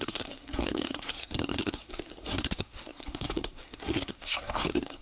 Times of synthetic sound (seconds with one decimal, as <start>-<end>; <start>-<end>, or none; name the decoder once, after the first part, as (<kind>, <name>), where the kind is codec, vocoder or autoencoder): 0.0-5.0 (codec, SNAC)